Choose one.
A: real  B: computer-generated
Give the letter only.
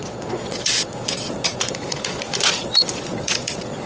B